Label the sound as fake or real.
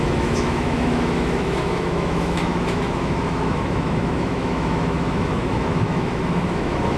fake